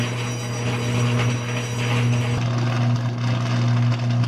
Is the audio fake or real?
real